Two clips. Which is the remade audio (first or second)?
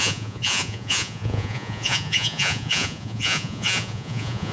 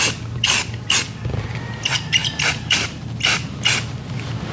first